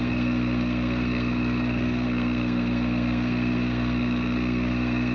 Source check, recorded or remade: remade